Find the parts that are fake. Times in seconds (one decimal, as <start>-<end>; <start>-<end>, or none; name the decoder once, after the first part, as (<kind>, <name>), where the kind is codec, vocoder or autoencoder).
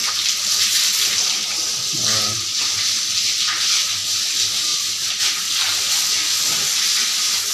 none